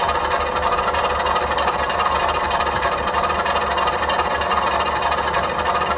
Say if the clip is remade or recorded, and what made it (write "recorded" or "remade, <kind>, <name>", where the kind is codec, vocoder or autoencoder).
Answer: remade, vocoder, BigVGAN v2